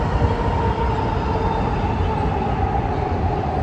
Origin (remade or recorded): recorded